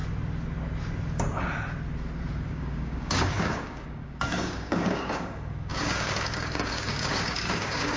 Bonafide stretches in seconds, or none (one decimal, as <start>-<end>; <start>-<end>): 0.0-2.5